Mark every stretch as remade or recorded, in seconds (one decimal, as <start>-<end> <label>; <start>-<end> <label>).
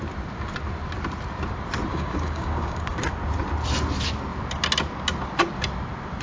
0.0-1.9 recorded; 1.9-3.0 remade; 3.0-6.2 recorded